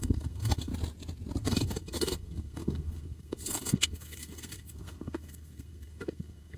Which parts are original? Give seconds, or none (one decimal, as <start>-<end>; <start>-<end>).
0.7-1.4